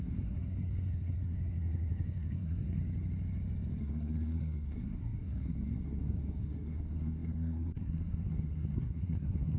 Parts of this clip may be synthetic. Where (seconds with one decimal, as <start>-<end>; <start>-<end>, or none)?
0.0-2.8; 3.8-9.6